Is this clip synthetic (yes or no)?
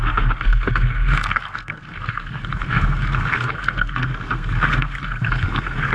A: yes